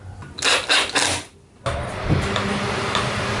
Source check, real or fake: real